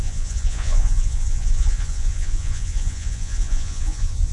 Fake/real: fake